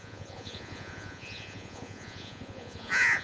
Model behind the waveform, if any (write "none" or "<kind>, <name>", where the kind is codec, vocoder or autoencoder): vocoder, Vocos